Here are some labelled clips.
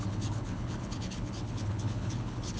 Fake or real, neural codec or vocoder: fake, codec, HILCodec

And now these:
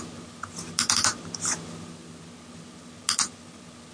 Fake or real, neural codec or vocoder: real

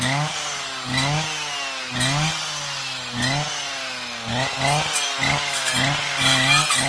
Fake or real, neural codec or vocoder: real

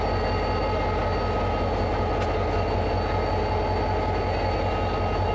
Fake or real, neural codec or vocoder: real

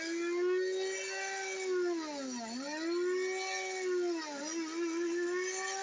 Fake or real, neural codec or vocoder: real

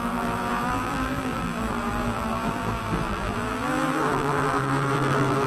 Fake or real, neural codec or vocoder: fake, vocoder, BigVGAN v2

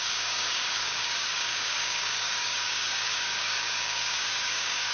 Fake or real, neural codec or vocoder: fake, codec, DAC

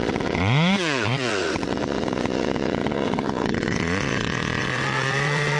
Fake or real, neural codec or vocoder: fake, vocoder, WaveNeXt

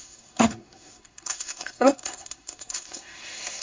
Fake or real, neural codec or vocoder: fake, codec, SNAC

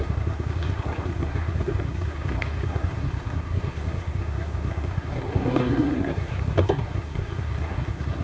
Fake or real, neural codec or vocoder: fake, codec, SNAC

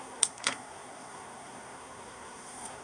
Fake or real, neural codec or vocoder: fake, codec, SNAC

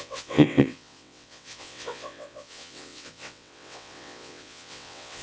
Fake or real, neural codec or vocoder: fake, vocoder, WaveNeXt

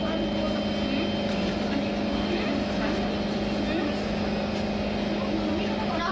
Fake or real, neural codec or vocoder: real